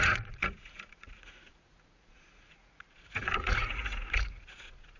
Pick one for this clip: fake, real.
fake